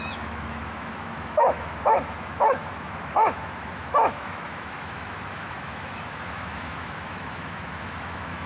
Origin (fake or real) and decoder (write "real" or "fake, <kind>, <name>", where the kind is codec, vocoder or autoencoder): fake, autoencoder, DAC-VAE